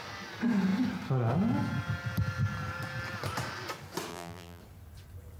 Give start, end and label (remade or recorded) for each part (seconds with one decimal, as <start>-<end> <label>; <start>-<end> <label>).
0.0-4.1 recorded; 4.1-4.6 remade; 4.6-5.4 recorded